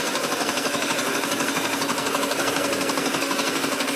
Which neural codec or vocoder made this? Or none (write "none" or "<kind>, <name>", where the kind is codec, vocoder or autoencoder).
codec, SNAC